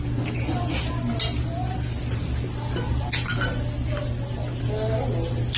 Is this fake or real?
real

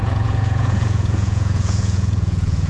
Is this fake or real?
fake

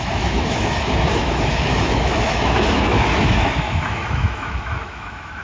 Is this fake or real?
fake